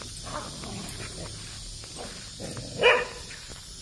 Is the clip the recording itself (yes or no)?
yes